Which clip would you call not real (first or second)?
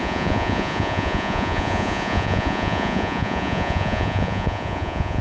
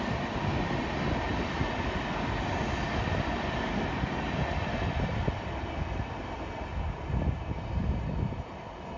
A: first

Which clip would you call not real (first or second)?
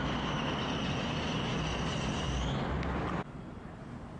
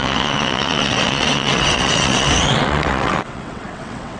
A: second